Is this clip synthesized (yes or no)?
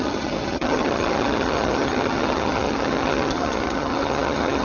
yes